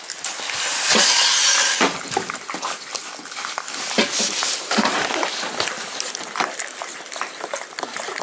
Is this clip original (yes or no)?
yes